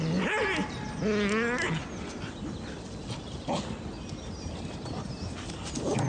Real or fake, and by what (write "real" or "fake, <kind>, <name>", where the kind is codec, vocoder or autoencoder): real